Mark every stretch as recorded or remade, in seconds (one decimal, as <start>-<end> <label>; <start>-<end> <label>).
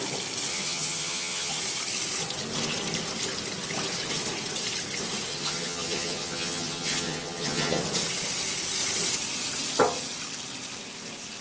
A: 0.0-0.5 recorded; 0.5-1.6 remade; 1.6-5.3 recorded; 5.3-7.8 remade; 7.8-11.4 recorded